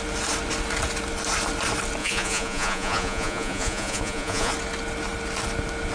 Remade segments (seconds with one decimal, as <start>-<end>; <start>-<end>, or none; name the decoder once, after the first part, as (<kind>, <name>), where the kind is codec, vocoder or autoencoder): 2.0-4.5 (vocoder, Vocos)